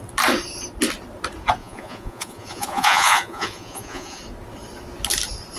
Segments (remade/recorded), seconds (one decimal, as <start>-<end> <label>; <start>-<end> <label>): 0.0-1.6 recorded; 1.6-4.2 remade; 4.2-5.6 recorded